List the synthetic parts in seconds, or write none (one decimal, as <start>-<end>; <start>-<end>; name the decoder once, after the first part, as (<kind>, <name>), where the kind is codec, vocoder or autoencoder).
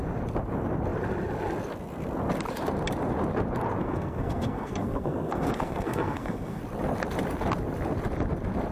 3.8-6.6 (codec, SNAC)